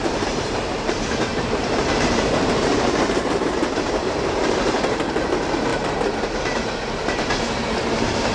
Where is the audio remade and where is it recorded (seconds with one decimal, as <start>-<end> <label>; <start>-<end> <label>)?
0.0-8.3 remade